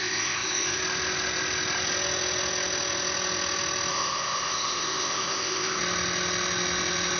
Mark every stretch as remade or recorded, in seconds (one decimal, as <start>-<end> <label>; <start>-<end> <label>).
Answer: 0.0-0.8 remade; 0.8-3.9 recorded; 3.9-5.8 remade; 5.8-7.2 recorded